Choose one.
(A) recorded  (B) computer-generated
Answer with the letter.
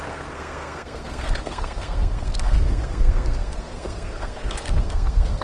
B